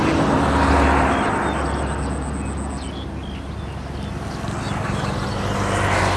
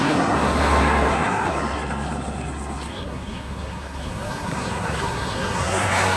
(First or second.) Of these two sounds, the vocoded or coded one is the second